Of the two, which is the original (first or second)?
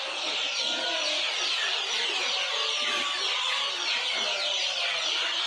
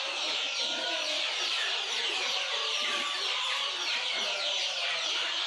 first